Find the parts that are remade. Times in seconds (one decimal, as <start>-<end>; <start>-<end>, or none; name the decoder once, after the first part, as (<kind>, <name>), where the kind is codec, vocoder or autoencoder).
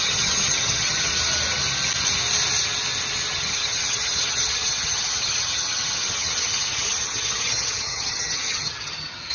0.0-1.1 (vocoder, HiFi-GAN); 3.3-9.3